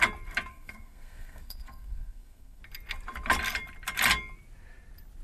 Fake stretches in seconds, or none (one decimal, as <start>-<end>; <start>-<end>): 0.5-2.6